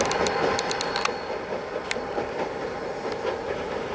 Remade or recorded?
recorded